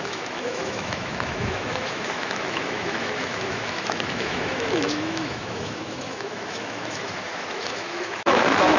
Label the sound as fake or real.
fake